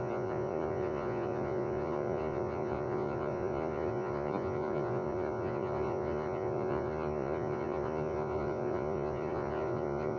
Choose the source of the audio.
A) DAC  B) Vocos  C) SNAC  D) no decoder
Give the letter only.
B